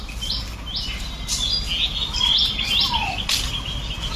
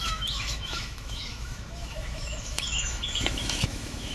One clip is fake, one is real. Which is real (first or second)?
first